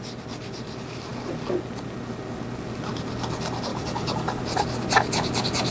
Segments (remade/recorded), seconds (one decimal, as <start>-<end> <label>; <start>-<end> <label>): 0.0-3.7 recorded; 3.7-4.4 remade; 4.4-5.7 recorded